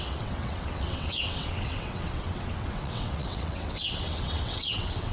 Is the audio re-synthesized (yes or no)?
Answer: yes